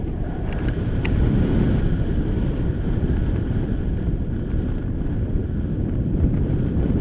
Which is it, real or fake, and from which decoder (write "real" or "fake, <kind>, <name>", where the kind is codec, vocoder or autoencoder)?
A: fake, vocoder, BigVGAN v2